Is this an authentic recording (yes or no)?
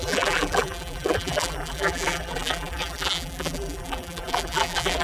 no